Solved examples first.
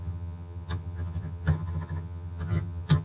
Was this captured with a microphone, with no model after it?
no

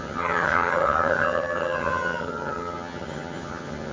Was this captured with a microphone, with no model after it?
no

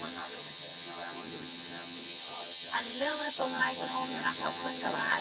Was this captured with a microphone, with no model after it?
no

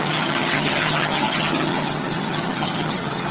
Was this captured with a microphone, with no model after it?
no